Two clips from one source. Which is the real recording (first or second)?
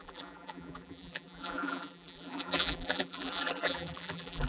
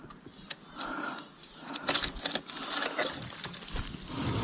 second